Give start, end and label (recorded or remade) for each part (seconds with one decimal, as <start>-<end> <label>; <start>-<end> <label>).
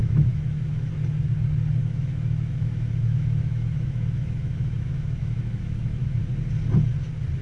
0.0-0.9 remade; 0.9-1.8 recorded; 1.8-6.2 remade; 6.2-7.4 recorded